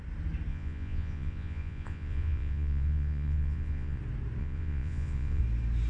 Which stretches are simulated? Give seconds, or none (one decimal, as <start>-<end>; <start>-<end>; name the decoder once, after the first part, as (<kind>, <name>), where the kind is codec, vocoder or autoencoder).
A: 0.5-4.0 (vocoder, Vocos); 4.4-5.4